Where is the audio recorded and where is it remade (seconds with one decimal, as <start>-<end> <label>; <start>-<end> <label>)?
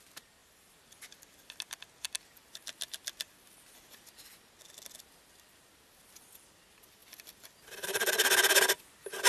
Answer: 0.0-9.3 recorded